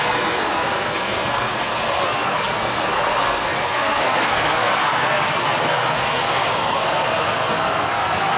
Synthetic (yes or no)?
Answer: yes